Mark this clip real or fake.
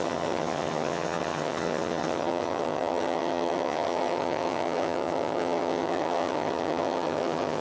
fake